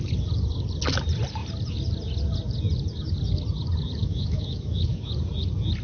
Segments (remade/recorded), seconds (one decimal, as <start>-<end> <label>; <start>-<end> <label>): 0.0-4.0 recorded; 4.0-5.1 remade; 5.1-5.8 recorded